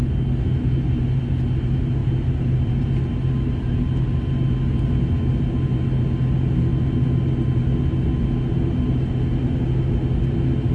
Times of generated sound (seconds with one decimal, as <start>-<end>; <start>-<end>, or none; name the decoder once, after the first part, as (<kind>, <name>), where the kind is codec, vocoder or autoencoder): none